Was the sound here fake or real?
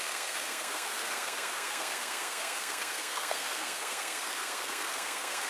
fake